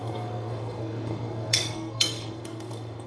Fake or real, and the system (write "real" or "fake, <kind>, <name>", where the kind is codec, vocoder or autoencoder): fake, codec, SNAC